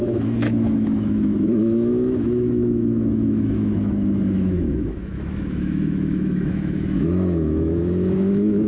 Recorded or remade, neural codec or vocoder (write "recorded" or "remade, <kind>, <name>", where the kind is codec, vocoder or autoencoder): remade, autoencoder, DAC-VAE